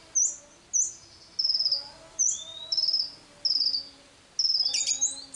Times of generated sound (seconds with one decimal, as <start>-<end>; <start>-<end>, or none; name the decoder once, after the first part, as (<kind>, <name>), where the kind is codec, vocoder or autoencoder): 1.8-3.0 (vocoder, BigVGAN v2)